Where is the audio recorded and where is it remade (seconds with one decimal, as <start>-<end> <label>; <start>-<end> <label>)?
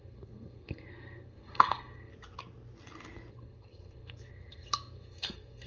0.0-2.1 remade; 2.1-3.3 recorded; 3.3-5.7 remade